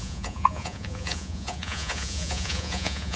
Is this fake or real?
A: fake